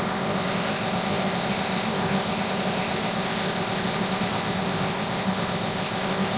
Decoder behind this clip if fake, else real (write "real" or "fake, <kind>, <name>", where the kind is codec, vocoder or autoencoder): fake, codec, ZipCodec